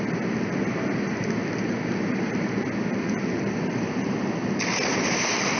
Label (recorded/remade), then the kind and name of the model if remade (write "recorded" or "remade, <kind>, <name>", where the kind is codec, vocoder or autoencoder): recorded